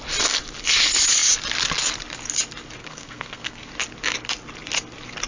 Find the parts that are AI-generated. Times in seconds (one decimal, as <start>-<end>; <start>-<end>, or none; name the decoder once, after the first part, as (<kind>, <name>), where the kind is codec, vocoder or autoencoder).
2.8-3.7 (codec, SNAC)